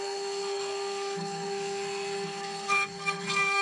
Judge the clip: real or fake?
fake